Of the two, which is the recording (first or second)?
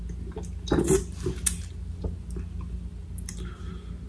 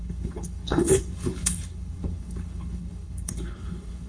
first